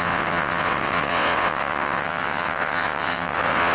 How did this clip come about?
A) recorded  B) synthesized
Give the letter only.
B